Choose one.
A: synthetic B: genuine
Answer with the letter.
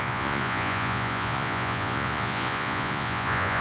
A